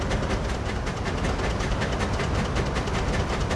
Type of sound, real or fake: real